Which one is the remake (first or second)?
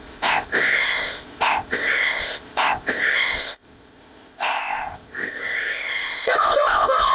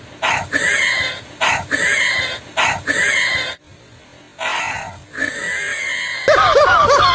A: first